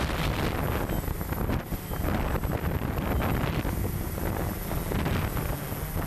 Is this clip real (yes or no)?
yes